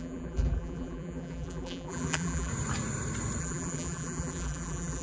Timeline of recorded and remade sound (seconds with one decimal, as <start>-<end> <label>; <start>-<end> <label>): 0.0-2.5 remade; 2.5-3.4 recorded; 3.4-5.0 remade